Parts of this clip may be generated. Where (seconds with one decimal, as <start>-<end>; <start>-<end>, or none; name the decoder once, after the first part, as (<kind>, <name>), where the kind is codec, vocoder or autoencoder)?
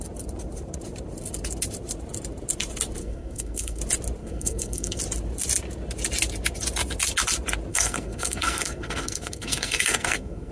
3.0-3.8 (codec, SNAC); 4.2-5.0; 7.7-10.5